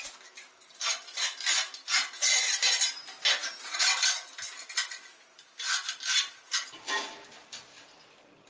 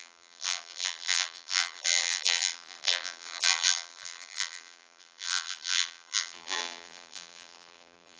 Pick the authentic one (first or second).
first